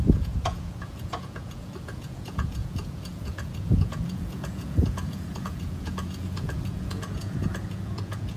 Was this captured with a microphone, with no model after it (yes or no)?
no